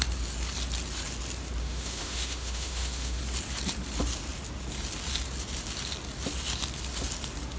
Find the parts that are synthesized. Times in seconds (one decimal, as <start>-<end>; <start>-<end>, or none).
1.6-3.2

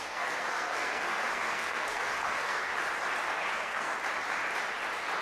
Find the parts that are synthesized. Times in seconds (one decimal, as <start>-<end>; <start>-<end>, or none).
0.0-2.7; 3.3-3.9

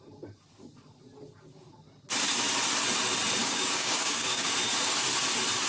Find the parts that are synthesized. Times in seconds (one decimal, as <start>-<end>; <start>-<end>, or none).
3.4-4.5